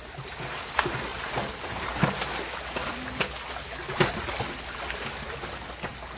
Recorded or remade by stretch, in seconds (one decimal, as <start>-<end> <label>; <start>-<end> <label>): 0.0-6.2 recorded